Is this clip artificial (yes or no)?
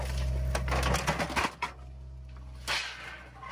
no